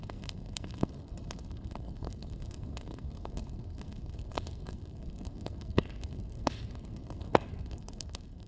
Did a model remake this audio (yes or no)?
yes